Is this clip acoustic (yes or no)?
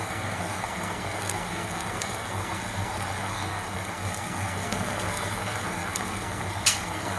no